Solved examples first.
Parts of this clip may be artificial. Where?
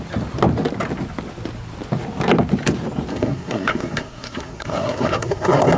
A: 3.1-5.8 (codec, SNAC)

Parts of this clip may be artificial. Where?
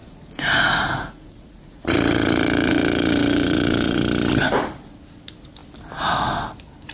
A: 0.0-4.0 (vocoder, Vocos)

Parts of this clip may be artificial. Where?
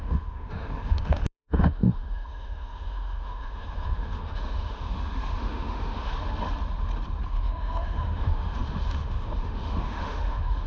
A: 0.0-6.1 (autoencoder, DAC-VAE); 7.3-10.7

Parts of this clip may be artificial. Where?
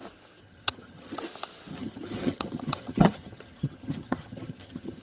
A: 0.4-1.2 (vocoder, HiFi-GAN); 1.7-5.0